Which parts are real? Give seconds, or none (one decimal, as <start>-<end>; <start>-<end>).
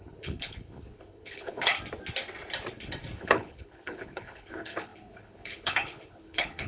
1.7-3.2